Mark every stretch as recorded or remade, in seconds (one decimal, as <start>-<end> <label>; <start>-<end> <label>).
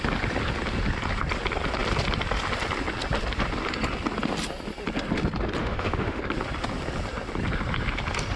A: 0.0-5.6 recorded; 5.6-6.2 remade; 6.2-8.4 recorded